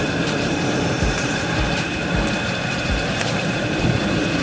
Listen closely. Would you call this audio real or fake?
fake